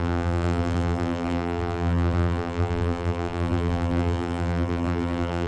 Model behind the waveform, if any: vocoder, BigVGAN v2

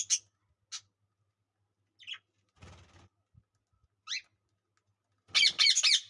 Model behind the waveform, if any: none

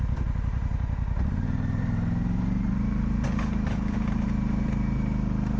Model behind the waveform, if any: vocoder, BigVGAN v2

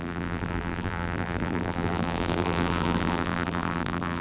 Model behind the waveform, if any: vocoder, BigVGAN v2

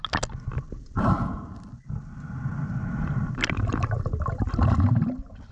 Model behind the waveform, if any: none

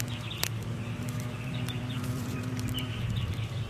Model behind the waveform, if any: vocoder, BigVGAN v2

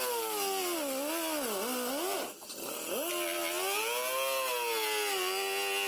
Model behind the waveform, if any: none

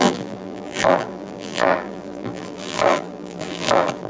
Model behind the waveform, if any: vocoder, BigVGAN v2